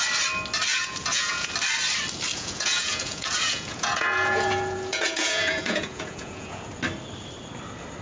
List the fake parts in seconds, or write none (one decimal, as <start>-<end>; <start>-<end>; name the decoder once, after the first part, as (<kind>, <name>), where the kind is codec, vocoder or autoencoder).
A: 0.7-1.5 (vocoder, Vocos); 2.3-6.7